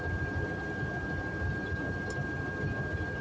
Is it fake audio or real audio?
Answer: real